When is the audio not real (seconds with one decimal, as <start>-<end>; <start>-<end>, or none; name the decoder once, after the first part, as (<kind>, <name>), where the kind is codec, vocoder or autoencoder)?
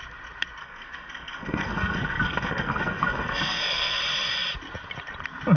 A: 0.6-4.0 (codec, SNAC)